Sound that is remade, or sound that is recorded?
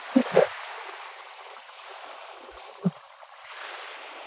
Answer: remade